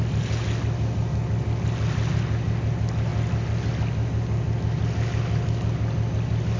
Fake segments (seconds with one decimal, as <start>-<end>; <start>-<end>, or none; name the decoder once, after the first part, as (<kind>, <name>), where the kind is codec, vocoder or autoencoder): none